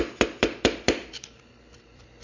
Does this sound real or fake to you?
fake